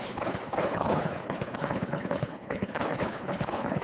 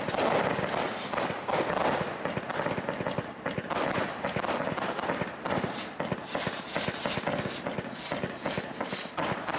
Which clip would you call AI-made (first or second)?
first